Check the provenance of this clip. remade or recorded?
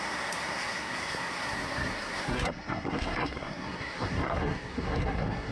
remade